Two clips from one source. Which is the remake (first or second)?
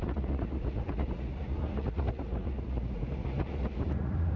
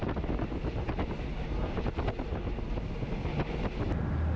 first